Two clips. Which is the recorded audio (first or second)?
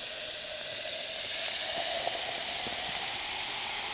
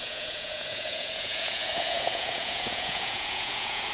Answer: first